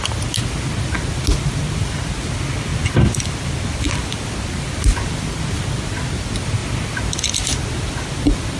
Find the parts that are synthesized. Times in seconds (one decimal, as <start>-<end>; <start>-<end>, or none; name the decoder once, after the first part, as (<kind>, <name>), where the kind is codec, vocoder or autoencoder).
none

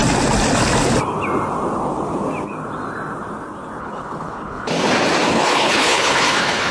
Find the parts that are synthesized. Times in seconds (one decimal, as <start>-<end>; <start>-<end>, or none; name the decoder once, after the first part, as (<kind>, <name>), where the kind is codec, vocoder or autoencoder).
3.8-4.7 (codec, HILCodec); 5.3-6.7

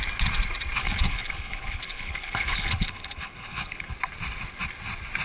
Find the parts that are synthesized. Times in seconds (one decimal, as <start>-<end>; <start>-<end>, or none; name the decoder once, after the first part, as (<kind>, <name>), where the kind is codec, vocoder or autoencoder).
0.8-3.9 (codec, HILCodec)

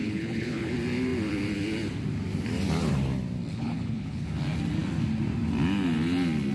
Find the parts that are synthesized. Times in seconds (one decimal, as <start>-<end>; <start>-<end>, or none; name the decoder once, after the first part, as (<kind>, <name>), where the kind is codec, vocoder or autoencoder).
0.0-0.7 (codec, HILCodec); 3.5-4.3